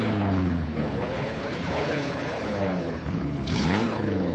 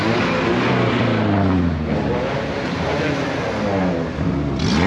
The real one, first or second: second